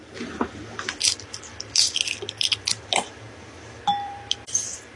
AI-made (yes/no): yes